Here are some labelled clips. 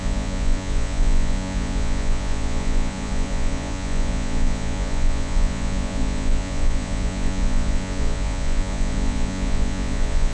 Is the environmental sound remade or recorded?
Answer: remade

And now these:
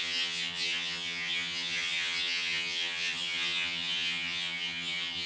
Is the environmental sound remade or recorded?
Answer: remade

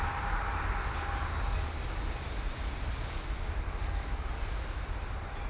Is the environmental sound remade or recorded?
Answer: recorded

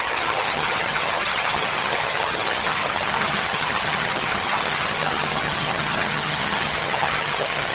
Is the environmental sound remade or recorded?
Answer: remade